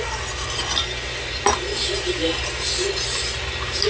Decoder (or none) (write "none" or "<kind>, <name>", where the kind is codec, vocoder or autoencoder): none